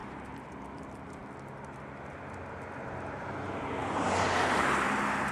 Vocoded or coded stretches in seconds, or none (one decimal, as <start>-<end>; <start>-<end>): 0.0-0.5; 3.8-5.3